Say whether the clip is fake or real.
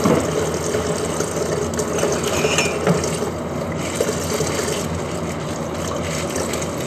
real